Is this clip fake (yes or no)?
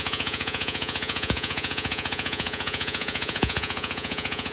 yes